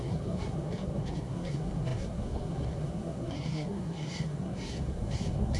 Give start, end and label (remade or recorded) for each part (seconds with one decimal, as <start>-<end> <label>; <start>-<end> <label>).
0.0-5.6 remade